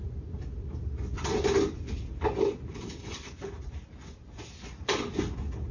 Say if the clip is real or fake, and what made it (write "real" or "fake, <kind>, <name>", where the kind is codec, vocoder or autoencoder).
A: real